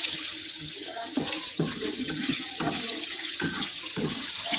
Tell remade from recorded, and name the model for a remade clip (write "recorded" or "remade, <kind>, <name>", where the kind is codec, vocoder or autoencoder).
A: remade, vocoder, HiFi-GAN